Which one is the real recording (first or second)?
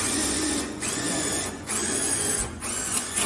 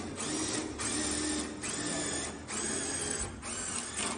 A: second